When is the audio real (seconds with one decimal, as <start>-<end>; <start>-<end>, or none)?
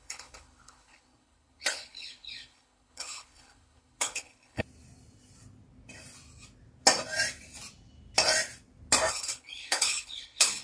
4.6-9.1